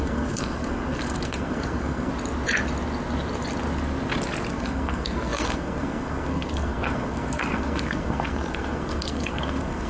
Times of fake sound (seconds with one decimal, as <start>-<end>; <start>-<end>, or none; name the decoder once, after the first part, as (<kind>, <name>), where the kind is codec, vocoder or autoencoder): 0.0-2.1 (codec, SNAC); 4.5-9.9